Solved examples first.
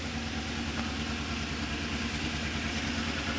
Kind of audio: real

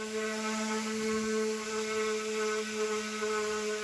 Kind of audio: real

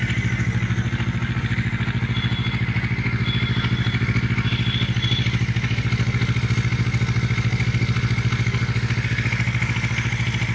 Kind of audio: real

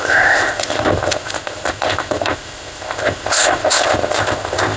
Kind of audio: fake